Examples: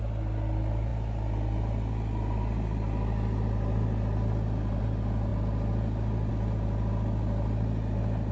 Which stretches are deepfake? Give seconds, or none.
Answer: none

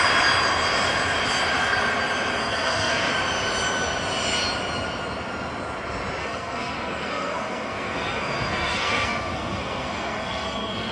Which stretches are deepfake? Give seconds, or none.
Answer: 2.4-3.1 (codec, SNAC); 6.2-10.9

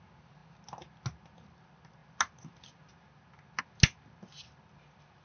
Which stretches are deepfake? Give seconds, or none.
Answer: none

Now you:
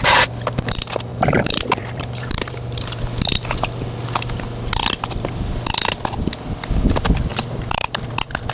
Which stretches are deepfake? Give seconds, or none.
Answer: 1.1-3.0 (vocoder, BigVGAN v2); 7.3-8.1

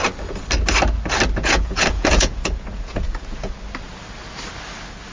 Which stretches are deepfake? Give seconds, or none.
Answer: 1.4-3.5 (vocoder, Vocos)

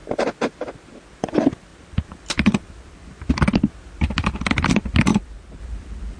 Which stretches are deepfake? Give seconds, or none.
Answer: 1.1-6.2 (vocoder, BigVGAN v2)

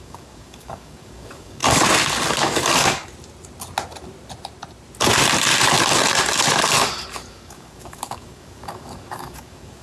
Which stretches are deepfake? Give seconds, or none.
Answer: 0.0-1.6 (codec, DAC); 2.4-3.1; 7.3-9.8